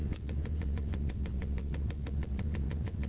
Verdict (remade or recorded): remade